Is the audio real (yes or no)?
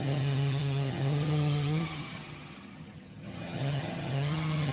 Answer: no